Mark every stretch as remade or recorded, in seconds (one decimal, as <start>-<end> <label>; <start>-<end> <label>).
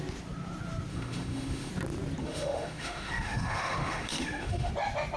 0.0-0.9 recorded; 0.9-1.7 remade; 1.7-2.2 recorded; 2.2-4.7 remade; 4.7-5.2 recorded